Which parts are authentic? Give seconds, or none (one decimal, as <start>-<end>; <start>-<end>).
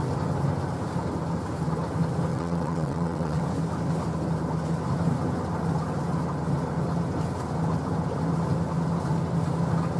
0.0-2.3; 3.4-10.0